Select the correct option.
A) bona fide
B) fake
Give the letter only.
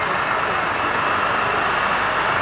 A